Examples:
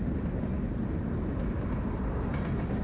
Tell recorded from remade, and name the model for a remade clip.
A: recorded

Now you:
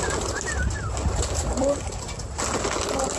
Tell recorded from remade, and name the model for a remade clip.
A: recorded